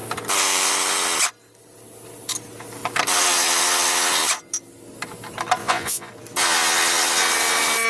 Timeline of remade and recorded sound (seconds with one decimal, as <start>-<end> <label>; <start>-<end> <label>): 0.0-5.6 recorded; 5.6-6.1 remade; 6.1-7.9 recorded